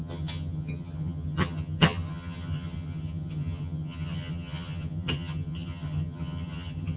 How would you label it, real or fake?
fake